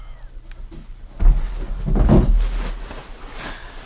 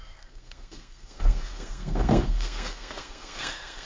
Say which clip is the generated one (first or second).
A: second